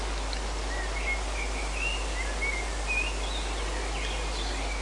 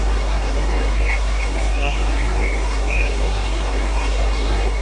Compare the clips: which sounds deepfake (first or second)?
second